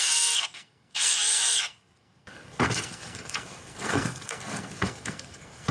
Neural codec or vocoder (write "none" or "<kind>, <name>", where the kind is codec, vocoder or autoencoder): codec, SNAC